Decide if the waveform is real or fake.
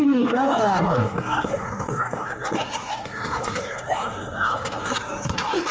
fake